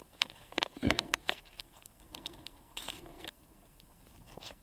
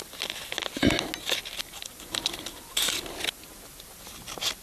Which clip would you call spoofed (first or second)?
first